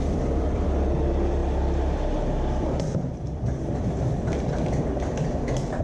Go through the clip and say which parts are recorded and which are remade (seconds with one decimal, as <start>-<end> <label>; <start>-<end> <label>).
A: 0.0-5.8 remade